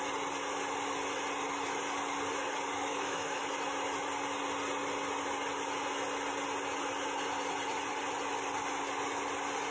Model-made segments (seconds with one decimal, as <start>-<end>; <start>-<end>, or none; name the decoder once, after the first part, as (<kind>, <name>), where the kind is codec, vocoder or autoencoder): 2.9-3.4 (autoencoder, DAC-VAE)